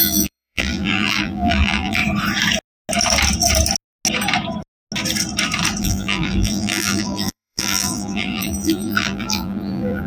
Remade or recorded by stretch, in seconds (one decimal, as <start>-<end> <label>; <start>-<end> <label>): 0.0-2.0 remade; 2.0-5.8 recorded; 5.8-10.1 remade